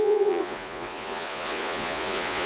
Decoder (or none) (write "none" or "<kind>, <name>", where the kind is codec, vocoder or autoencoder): vocoder, Vocos